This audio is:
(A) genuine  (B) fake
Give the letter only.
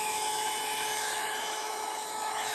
B